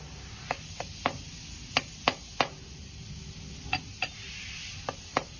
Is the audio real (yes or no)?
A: yes